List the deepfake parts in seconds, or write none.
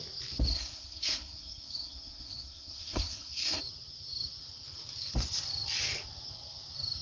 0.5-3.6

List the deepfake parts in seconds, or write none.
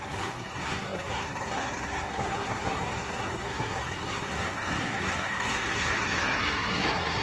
0.0-7.2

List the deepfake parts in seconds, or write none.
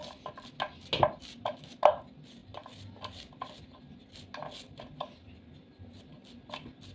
none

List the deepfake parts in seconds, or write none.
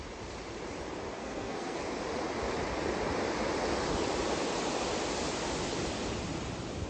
1.2-1.8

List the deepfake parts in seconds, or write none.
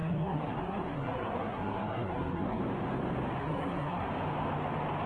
0.0-2.6; 3.4-4.1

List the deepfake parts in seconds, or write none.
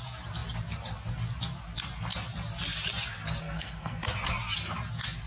3.4-4.0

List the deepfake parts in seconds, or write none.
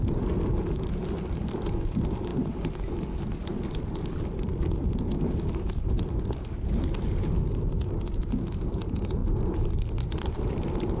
none